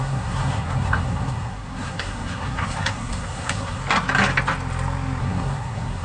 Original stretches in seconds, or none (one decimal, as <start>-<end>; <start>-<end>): 3.8-5.2